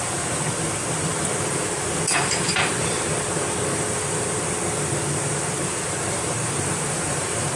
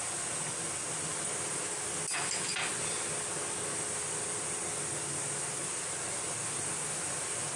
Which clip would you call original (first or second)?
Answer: second